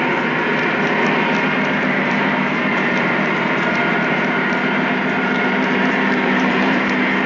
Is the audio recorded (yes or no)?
no